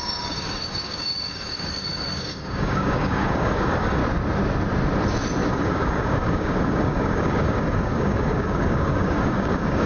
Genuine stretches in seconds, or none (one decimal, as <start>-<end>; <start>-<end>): 4.0-5.5